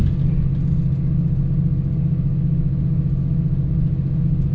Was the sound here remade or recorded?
recorded